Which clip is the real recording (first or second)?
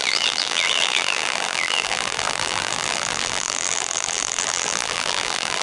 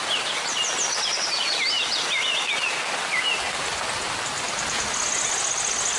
second